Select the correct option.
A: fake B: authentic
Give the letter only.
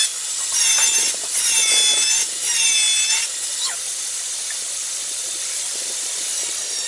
B